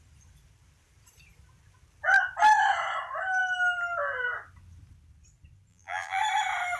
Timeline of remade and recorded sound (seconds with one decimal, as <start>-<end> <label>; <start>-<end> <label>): 0.0-5.7 recorded; 5.7-6.2 remade; 6.2-6.8 recorded